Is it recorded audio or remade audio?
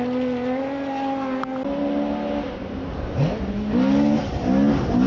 recorded